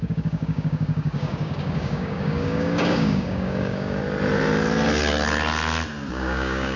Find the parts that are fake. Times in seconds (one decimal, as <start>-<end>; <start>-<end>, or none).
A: 0.0-4.0; 6.1-6.8